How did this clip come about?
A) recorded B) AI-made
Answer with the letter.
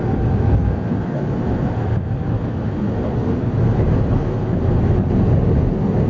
A